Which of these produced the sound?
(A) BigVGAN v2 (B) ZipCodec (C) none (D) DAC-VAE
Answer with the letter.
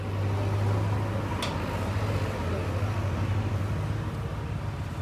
C